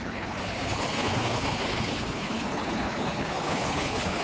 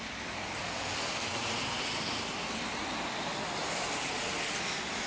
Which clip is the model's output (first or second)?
first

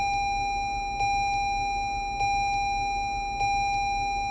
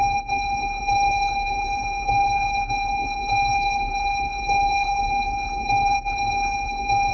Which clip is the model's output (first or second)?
second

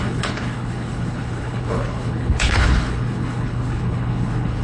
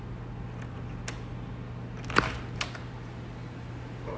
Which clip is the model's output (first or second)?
first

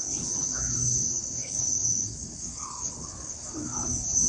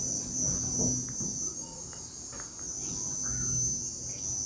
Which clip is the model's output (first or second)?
first